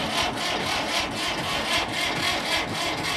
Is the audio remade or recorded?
recorded